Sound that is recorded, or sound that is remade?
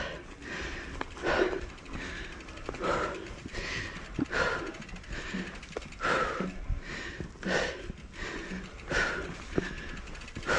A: recorded